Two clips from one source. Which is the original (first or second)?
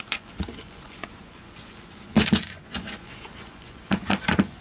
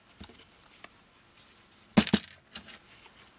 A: second